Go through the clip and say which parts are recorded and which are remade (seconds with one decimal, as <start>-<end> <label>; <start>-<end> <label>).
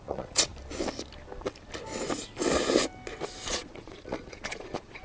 0.0-0.5 remade; 0.5-3.5 recorded; 3.5-5.0 remade